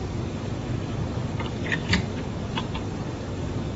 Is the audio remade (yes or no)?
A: yes